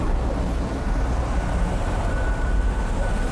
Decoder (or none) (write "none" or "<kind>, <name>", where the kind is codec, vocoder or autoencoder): vocoder, BigVGAN v2